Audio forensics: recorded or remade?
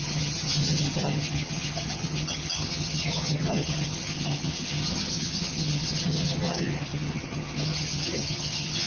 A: remade